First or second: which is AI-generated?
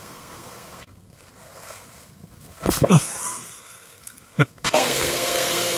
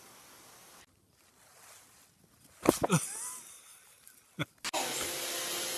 first